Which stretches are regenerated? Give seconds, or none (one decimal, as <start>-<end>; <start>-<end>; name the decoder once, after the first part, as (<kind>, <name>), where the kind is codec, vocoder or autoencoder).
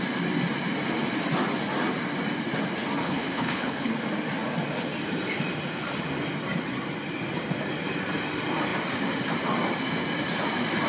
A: 3.0-3.9 (codec, HILCodec)